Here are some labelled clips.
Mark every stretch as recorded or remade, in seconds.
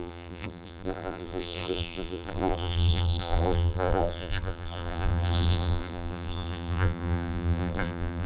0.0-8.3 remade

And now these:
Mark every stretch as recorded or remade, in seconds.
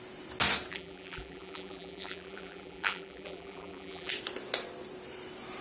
0.0-0.7 recorded; 0.7-4.1 remade; 4.1-5.6 recorded